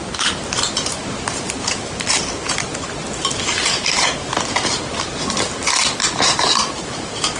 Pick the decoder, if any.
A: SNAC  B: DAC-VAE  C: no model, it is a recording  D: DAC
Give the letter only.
C